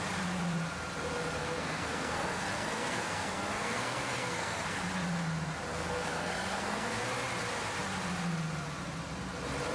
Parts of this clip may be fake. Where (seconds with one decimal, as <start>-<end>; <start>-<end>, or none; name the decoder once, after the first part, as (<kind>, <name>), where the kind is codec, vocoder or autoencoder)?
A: 1.4-4.8 (codec, SNAC); 5.7-7.0